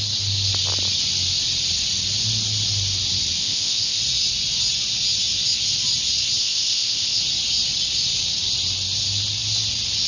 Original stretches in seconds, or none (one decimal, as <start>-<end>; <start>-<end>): 0.0-3.4; 4.0-6.4; 7.2-10.1